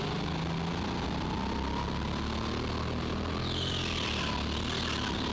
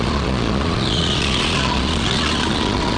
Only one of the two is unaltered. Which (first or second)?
first